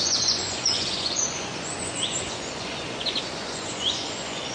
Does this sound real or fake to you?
fake